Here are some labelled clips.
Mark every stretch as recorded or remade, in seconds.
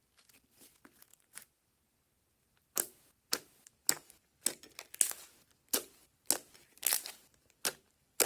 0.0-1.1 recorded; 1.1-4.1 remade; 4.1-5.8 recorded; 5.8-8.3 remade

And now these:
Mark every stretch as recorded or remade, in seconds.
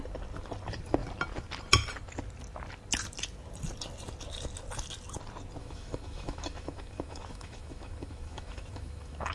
0.0-5.6 recorded; 5.6-9.3 remade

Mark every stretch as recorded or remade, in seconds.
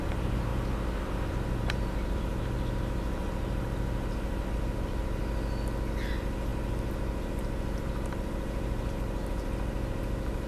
0.0-0.5 remade; 0.5-1.0 recorded; 1.0-5.2 remade; 5.2-6.1 recorded; 6.1-10.5 remade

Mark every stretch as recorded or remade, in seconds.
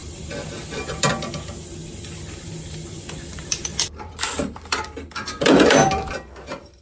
0.0-1.1 remade; 1.1-1.8 recorded; 1.8-5.9 remade; 5.9-6.8 recorded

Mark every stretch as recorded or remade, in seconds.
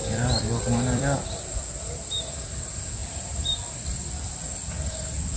0.0-1.5 remade; 1.5-5.4 recorded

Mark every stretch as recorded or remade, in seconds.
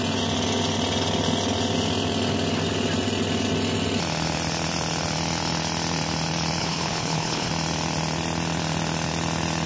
0.0-6.6 recorded; 6.6-7.5 remade; 7.5-9.7 recorded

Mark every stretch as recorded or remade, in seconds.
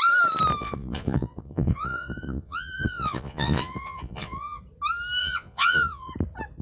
0.0-0.6 recorded; 0.6-4.6 remade; 4.6-5.2 recorded; 5.2-6.1 remade; 6.1-6.6 recorded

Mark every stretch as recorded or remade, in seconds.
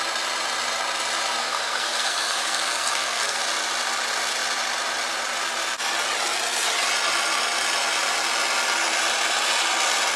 0.0-1.4 recorded; 1.4-3.4 remade; 3.4-10.2 recorded